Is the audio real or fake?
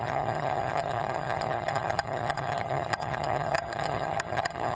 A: fake